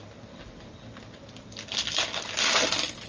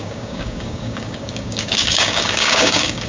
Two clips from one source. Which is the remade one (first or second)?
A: second